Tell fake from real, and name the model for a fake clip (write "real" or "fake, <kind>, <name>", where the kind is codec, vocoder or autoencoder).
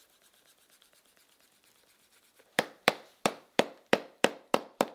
fake, vocoder, BigVGAN v2